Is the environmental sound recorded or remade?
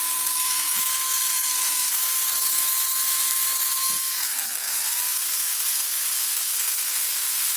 remade